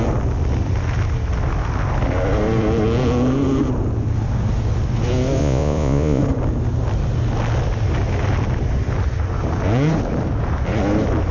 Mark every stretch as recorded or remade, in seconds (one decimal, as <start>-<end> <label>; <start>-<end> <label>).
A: 0.0-5.4 recorded; 5.4-6.2 remade; 6.2-11.3 recorded

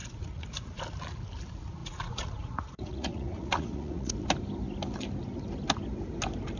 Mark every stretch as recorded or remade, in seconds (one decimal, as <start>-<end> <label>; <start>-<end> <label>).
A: 0.0-0.8 remade; 0.8-1.8 recorded; 1.8-4.1 remade; 4.1-6.6 recorded

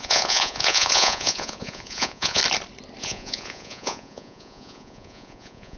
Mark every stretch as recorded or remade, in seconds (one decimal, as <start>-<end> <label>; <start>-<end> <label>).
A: 0.0-2.4 remade; 2.4-3.0 recorded; 3.0-5.8 remade

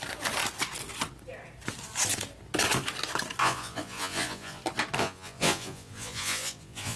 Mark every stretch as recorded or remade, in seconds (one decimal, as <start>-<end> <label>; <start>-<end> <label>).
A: 0.0-3.4 recorded; 3.4-4.6 remade; 4.6-5.0 recorded; 5.0-7.0 remade

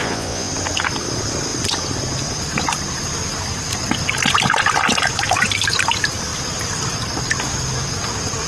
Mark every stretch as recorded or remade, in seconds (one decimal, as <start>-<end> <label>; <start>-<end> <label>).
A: 0.0-0.5 remade; 0.5-8.5 recorded

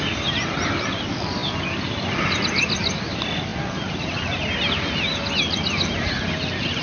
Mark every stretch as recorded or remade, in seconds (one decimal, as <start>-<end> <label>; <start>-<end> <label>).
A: 0.0-6.8 recorded

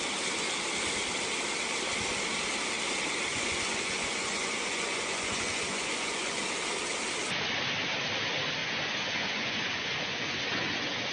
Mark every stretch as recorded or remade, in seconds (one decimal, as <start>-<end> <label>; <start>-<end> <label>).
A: 0.0-3.3 recorded; 3.3-6.4 remade; 6.4-8.6 recorded; 8.6-11.1 remade

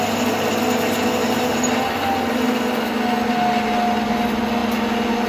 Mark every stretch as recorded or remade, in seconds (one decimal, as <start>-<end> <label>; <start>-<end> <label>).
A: 0.0-5.3 recorded